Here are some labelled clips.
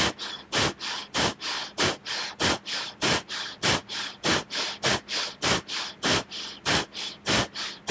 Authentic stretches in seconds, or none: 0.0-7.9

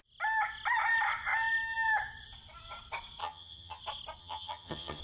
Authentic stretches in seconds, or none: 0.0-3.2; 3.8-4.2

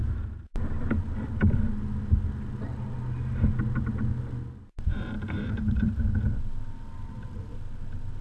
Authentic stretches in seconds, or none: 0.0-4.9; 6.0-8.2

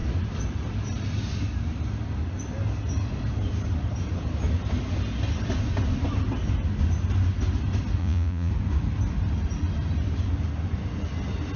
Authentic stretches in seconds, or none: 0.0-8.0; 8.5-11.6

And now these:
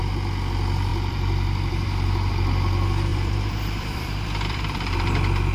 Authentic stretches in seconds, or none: 0.0-0.9; 2.3-3.1

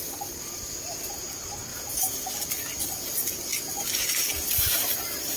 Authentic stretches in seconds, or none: 0.0-5.4

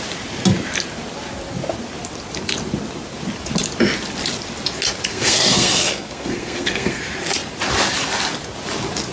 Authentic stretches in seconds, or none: 0.0-5.1; 7.0-9.1